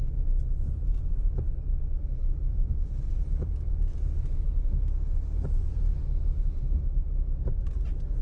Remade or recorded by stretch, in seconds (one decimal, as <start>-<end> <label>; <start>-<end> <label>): 0.0-2.2 recorded; 2.2-5.8 remade; 5.8-8.2 recorded